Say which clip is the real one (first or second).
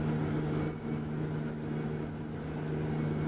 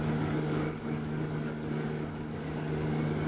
first